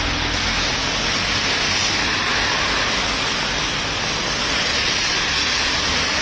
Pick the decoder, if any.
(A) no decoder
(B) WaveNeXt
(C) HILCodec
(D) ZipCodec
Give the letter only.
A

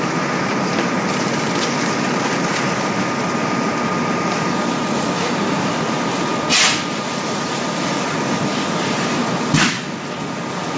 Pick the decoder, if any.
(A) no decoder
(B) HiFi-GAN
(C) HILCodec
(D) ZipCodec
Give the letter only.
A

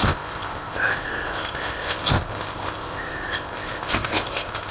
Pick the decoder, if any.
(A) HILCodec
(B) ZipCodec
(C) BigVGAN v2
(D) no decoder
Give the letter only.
B